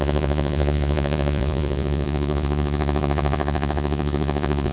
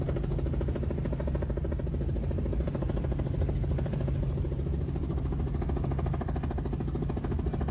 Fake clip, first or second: first